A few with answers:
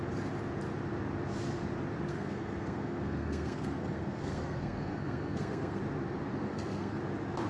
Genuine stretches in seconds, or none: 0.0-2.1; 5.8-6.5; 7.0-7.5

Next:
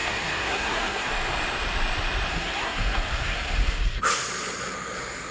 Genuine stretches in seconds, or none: 1.1-2.3; 4.0-5.3